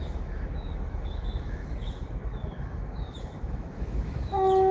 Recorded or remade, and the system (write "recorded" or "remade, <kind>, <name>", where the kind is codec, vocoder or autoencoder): remade, autoencoder, DAC-VAE